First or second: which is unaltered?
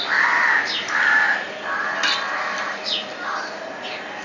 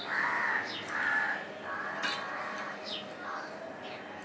second